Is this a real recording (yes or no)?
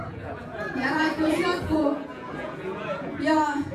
no